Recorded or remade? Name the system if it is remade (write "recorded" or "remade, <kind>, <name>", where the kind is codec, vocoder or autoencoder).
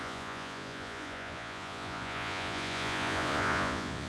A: remade, vocoder, Vocos